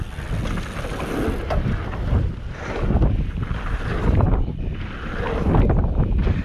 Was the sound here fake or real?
real